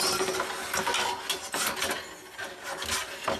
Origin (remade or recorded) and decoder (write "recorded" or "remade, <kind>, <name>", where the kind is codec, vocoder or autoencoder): recorded